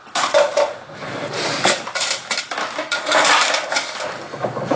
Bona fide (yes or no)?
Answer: yes